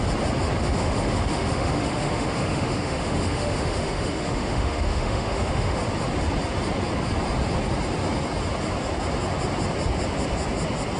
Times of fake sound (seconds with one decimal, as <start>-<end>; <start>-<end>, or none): 0.6-5.8